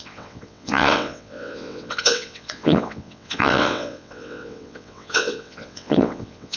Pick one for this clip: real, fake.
fake